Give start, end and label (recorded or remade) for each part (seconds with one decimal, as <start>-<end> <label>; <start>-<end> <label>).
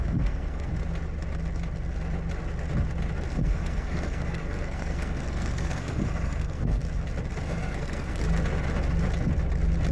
0.0-0.7 remade; 0.7-3.3 recorded; 3.3-6.8 remade; 6.8-7.4 recorded; 7.4-8.2 remade; 8.2-9.9 recorded